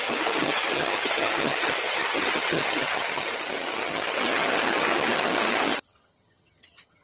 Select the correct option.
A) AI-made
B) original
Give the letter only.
A